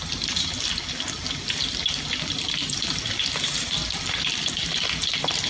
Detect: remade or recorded recorded